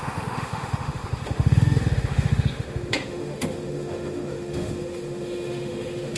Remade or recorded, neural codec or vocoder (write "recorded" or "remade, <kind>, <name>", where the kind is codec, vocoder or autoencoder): remade, autoencoder, DAC-VAE